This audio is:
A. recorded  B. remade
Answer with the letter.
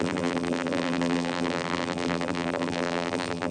B